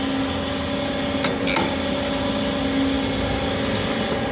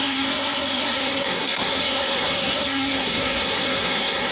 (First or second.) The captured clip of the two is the first